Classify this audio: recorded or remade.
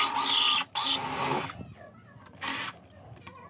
recorded